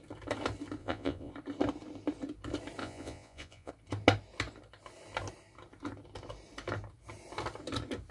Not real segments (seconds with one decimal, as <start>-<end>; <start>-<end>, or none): 0.8-1.3; 2.8-3.7